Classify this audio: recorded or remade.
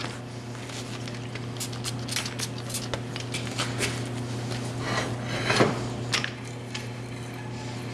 recorded